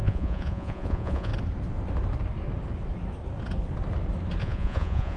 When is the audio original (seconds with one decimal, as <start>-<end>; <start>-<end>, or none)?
1.3-4.4